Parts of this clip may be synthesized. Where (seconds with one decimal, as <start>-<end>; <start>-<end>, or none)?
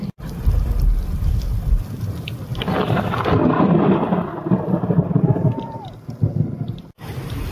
2.5-5.8